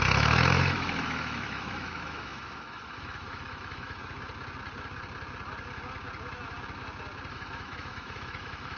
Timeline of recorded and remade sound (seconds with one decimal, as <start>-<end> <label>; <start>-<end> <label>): 0.0-4.0 remade; 4.0-7.3 recorded; 7.3-8.8 remade